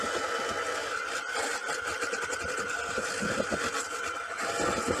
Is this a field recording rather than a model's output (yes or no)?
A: yes